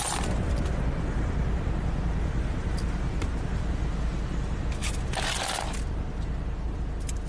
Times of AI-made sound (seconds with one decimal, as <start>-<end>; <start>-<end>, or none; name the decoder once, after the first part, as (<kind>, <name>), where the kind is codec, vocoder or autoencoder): none